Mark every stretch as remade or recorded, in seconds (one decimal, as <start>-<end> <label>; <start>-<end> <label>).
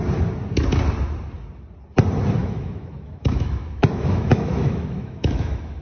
0.0-2.4 recorded; 2.4-5.8 remade